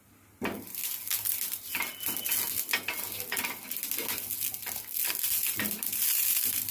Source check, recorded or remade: recorded